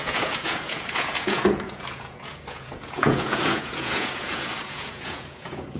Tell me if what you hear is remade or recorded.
remade